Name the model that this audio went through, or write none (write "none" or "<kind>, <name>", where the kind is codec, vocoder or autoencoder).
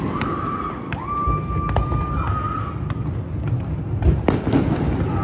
none